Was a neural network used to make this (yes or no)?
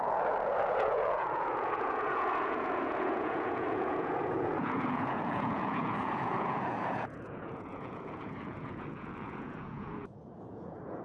yes